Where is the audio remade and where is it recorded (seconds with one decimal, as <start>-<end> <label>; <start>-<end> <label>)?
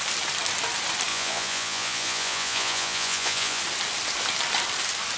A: 0.0-1.1 recorded; 1.1-3.6 remade; 3.6-5.2 recorded